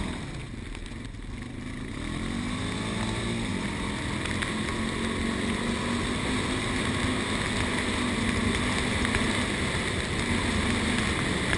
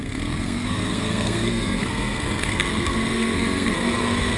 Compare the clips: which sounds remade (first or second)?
second